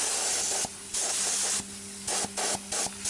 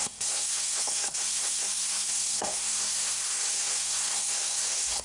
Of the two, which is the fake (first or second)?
second